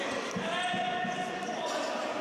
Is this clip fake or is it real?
real